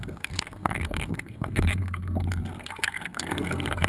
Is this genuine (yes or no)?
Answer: no